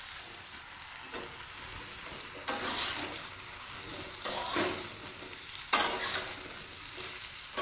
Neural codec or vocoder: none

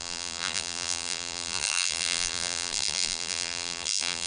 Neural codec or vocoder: vocoder, BigVGAN v2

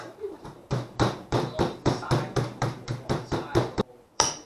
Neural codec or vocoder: vocoder, BigVGAN v2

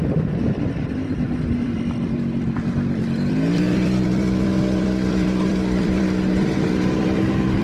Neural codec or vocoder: vocoder, BigVGAN v2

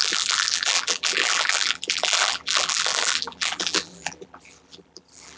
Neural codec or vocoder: vocoder, BigVGAN v2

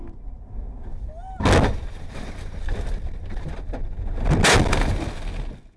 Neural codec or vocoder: none